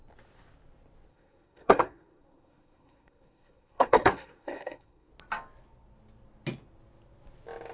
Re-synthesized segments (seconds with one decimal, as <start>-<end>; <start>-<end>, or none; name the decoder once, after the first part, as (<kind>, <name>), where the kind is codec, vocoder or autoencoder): 1.1-5.1 (codec, SNAC)